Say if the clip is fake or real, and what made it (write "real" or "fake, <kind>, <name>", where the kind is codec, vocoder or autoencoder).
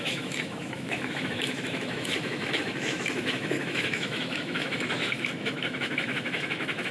fake, autoencoder, DAC-VAE